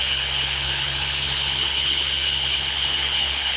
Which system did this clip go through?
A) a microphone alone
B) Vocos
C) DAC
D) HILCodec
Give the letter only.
D